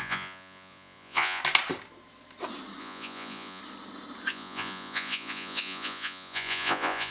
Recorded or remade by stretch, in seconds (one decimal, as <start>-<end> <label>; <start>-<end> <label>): 0.0-1.4 remade; 1.4-2.8 recorded; 2.8-3.6 remade; 3.6-4.3 recorded; 4.3-7.1 remade